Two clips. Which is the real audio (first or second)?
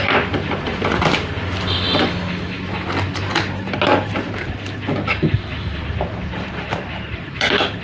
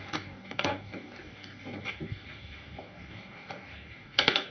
first